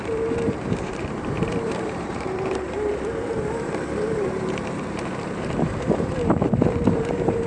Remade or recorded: remade